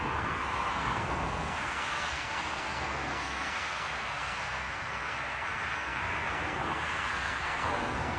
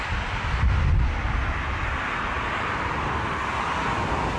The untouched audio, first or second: second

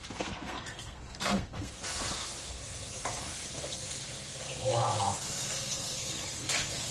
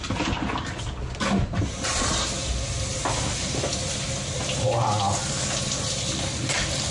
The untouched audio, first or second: second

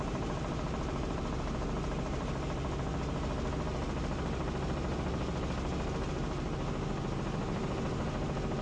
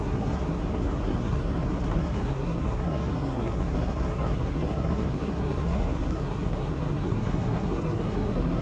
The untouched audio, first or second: first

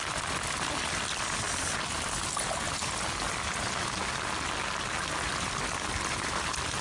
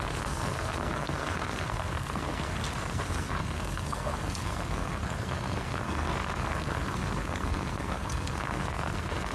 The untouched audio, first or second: first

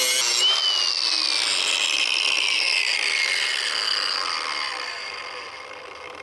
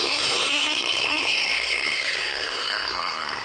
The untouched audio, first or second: first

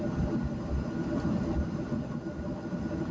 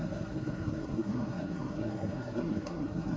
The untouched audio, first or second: first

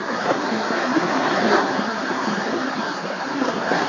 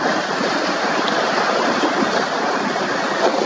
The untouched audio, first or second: second